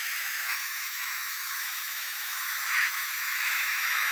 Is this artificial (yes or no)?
yes